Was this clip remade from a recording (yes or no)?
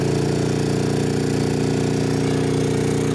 no